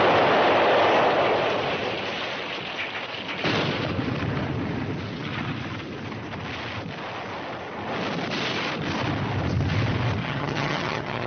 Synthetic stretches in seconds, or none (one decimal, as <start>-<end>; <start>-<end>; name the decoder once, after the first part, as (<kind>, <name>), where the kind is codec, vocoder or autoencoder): 10.2-11.3 (vocoder, HiFi-GAN)